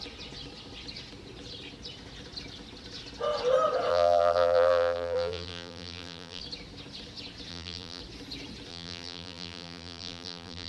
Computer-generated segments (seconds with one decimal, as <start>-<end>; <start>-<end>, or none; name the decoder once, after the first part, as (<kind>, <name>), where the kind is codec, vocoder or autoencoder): 3.9-6.4 (vocoder, BigVGAN v2); 7.5-8.0; 8.7-10.7